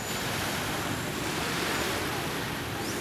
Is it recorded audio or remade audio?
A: recorded